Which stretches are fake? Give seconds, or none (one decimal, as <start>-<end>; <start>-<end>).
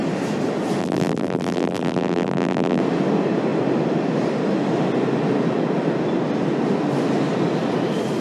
0.8-2.8